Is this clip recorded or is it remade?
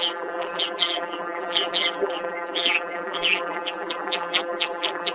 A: remade